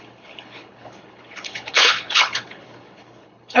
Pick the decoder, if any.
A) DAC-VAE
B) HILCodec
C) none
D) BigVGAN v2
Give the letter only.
B